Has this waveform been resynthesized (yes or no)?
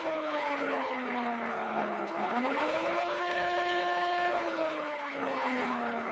yes